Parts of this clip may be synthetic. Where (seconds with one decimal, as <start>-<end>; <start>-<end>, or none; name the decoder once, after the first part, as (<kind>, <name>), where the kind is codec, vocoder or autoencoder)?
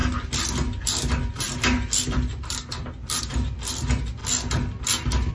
none